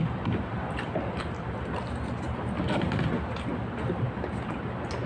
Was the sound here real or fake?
real